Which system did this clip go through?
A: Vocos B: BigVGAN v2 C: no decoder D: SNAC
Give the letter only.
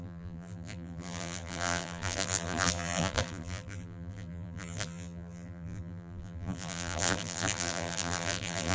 B